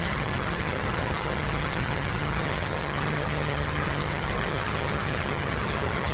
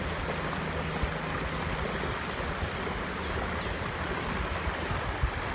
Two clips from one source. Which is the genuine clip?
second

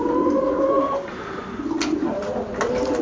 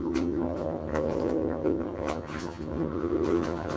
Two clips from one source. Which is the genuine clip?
first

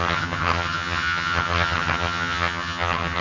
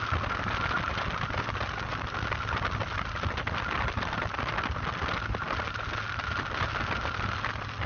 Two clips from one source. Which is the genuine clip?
second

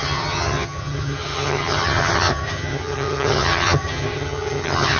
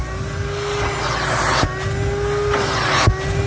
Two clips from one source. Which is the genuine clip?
second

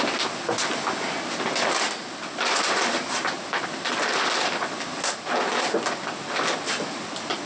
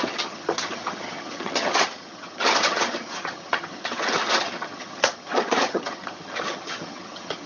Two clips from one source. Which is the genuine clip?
first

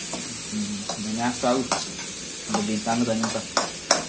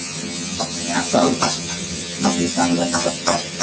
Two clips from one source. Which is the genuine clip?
first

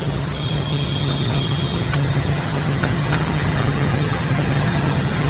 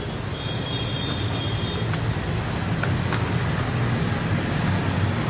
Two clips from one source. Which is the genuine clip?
second